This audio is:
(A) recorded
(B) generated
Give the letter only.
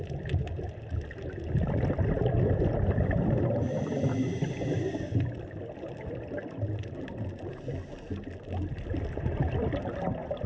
A